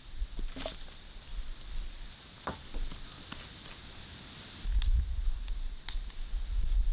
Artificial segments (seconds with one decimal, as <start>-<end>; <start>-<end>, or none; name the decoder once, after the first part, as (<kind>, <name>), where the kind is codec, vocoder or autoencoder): none